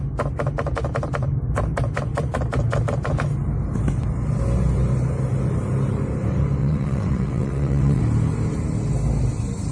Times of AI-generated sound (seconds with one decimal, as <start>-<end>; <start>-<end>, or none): 6.6-8.0